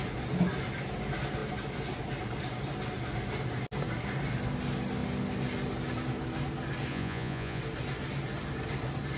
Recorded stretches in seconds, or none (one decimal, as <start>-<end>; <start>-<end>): 0.0-6.9; 7.6-9.2